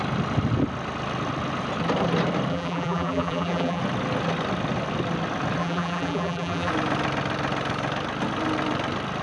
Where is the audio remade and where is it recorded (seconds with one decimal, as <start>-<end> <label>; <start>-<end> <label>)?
0.0-2.5 recorded; 2.5-3.8 remade; 3.8-5.6 recorded; 5.6-6.7 remade; 6.7-9.2 recorded